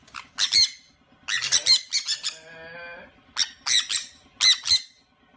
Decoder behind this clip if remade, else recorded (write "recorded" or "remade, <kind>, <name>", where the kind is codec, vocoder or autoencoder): recorded